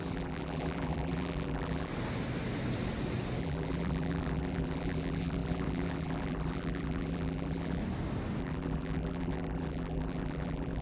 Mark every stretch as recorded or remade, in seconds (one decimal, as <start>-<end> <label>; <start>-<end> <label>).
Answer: 0.0-1.9 remade; 1.9-3.4 recorded; 3.4-7.8 remade; 7.8-8.4 recorded; 8.4-10.8 remade